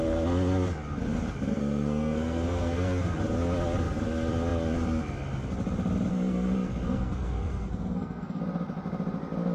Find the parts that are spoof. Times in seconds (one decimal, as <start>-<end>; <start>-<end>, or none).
1.5-3.1; 6.1-8.4

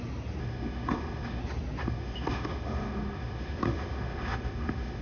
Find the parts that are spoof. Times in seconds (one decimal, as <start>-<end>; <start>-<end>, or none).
0.4-1.4; 1.8-5.0

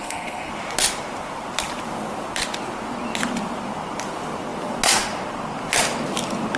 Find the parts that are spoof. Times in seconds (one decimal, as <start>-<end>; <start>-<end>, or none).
0.0-0.5